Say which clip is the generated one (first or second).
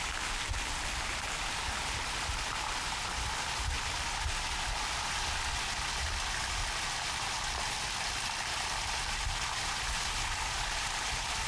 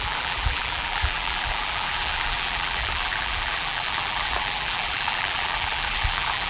second